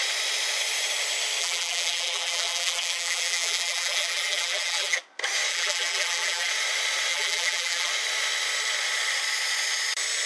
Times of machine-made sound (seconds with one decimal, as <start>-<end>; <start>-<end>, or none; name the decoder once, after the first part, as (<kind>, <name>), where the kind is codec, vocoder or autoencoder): 1.4-5.0 (vocoder, BigVGAN v2); 5.5-6.5; 7.1-7.9